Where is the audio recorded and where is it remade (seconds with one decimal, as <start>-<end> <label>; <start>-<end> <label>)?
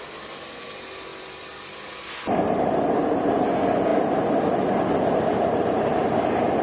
0.0-1.1 recorded; 1.1-2.8 remade; 2.8-6.6 recorded